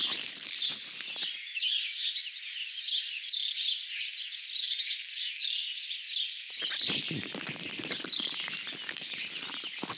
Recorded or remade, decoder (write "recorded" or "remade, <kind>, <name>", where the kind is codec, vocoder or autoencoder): recorded